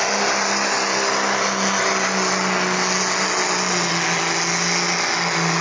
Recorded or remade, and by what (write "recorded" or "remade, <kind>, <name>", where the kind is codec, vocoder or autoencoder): recorded